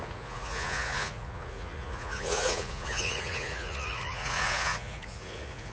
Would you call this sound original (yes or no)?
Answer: no